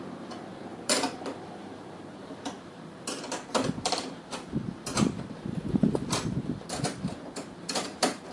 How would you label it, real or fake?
fake